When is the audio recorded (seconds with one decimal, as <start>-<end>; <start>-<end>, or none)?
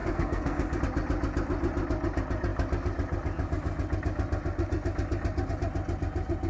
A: 0.8-6.5